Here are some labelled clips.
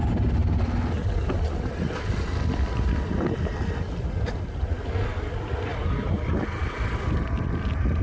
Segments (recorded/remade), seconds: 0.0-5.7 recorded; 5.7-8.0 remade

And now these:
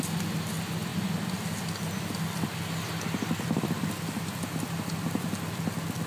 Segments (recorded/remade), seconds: 0.0-6.1 recorded

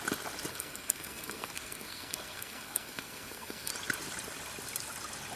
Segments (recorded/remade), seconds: 0.0-0.5 recorded; 0.5-3.7 remade; 3.7-5.4 recorded

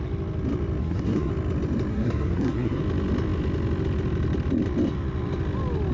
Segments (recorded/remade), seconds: 0.0-0.8 recorded; 0.8-1.3 remade; 1.3-1.9 recorded; 1.9-2.8 remade; 2.8-5.9 recorded

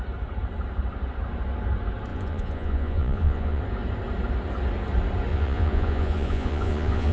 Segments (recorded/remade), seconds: 0.0-2.1 recorded; 2.1-3.6 remade; 3.6-5.3 recorded; 5.3-7.1 remade

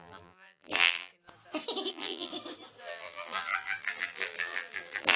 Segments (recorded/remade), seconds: 0.0-1.1 remade; 1.1-1.9 recorded; 1.9-2.3 remade; 2.3-2.8 recorded; 2.8-5.2 remade